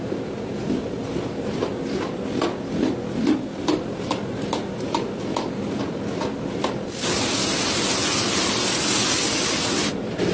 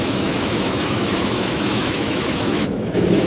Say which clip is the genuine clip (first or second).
first